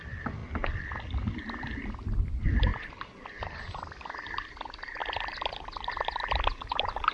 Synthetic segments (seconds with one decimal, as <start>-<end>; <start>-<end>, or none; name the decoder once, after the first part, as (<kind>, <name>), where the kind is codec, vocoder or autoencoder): none